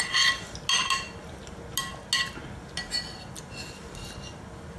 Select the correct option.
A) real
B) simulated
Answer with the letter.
A